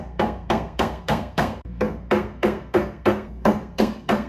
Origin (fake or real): fake